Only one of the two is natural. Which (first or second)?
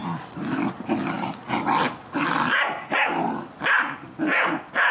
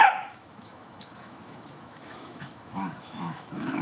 first